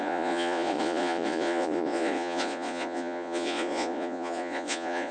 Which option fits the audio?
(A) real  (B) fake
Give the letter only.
B